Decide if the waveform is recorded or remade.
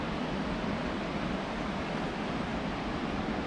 recorded